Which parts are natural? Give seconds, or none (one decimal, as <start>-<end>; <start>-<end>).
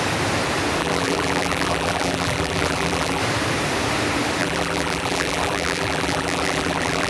0.0-0.8; 3.2-4.4